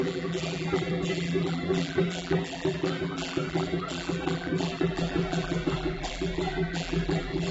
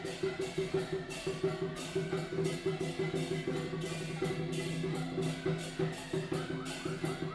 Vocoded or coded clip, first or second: first